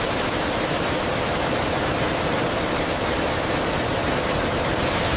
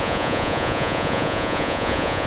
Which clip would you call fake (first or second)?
second